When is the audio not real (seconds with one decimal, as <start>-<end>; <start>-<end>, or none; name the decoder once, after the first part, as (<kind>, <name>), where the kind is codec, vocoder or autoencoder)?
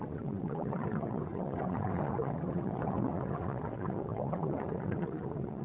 0.0-5.6 (vocoder, WaveNeXt)